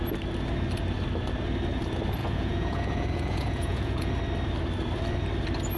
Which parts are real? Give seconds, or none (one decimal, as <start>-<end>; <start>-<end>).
0.0-2.2; 4.1-5.8